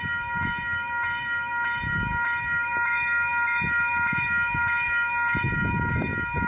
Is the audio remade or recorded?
remade